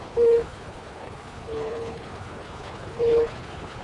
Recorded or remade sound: remade